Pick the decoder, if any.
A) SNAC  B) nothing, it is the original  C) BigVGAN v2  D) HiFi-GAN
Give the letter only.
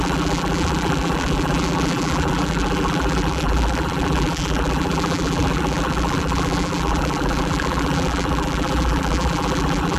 C